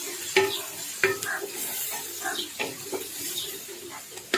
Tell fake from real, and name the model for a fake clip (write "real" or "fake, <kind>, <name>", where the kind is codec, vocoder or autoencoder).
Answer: fake, vocoder, BigVGAN v2